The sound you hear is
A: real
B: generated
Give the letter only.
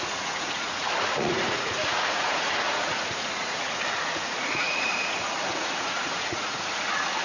B